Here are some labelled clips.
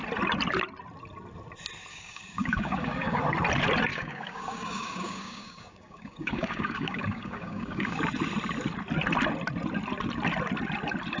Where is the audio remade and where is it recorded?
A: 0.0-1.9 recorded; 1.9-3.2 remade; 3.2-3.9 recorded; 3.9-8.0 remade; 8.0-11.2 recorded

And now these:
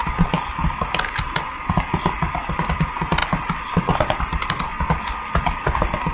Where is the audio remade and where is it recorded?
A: 0.0-6.1 recorded

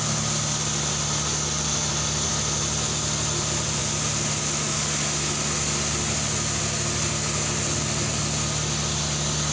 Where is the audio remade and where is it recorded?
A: 0.0-9.5 recorded

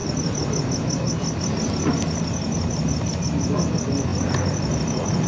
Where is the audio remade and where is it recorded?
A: 0.0-5.3 recorded

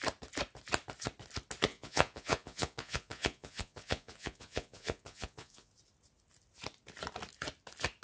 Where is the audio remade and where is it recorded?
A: 0.0-1.7 recorded; 1.7-5.7 remade; 5.7-8.0 recorded

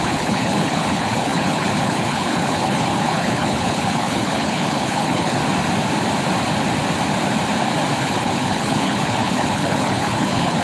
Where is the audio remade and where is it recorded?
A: 0.0-5.4 remade; 5.4-8.0 recorded; 8.0-10.6 remade